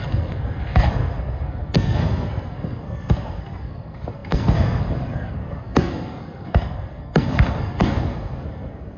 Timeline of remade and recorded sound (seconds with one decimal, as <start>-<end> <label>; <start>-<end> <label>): 0.0-9.0 remade